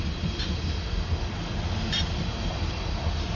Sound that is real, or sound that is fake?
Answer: real